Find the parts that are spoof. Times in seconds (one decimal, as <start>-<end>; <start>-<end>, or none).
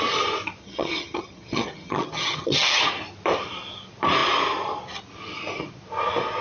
0.6-2.8